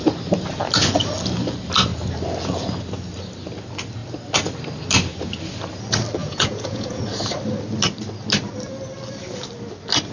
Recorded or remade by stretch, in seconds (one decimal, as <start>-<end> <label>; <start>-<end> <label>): 0.0-6.2 recorded; 6.2-7.0 remade; 7.0-10.1 recorded